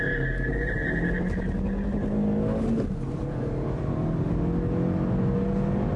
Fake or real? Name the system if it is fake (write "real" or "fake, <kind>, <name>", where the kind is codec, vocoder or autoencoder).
real